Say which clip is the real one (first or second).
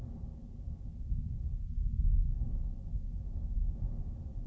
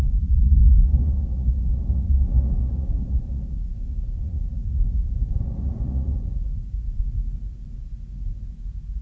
first